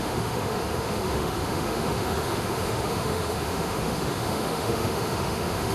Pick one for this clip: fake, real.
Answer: fake